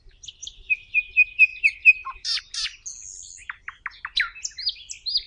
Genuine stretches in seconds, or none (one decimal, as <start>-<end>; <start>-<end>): 0.0-0.4; 1.0-1.5; 2.4-5.3